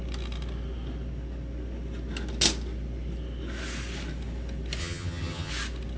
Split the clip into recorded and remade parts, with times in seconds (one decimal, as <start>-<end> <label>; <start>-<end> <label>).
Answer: 0.0-4.8 recorded; 4.8-5.5 remade; 5.5-6.0 recorded